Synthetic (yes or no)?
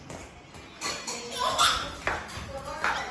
no